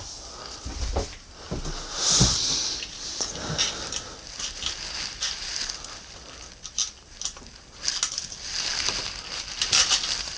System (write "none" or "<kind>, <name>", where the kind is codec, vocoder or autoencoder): none